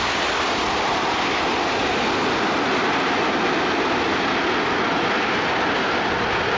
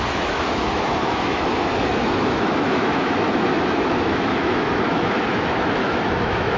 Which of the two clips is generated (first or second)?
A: second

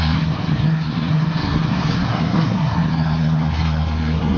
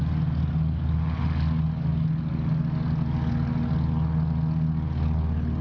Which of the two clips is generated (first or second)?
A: first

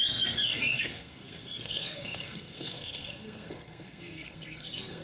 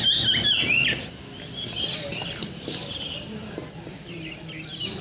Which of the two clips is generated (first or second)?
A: first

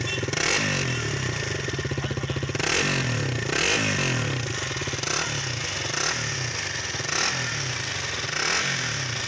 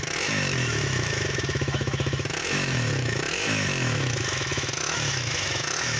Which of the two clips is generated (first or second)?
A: second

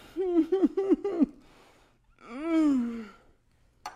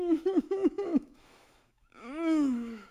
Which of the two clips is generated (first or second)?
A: second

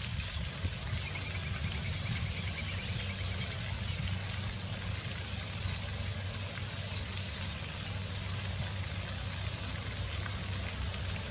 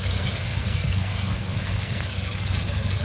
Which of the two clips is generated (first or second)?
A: second